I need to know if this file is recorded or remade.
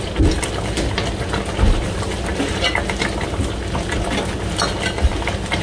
recorded